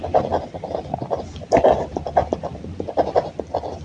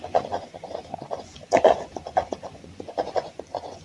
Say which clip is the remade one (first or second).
second